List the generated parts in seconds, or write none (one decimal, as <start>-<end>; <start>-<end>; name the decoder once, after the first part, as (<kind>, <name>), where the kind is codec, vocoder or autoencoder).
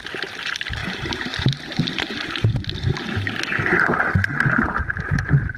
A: none